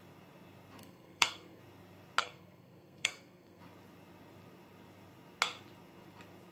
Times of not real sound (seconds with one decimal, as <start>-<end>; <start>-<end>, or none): 0.8-1.6; 2.2-3.6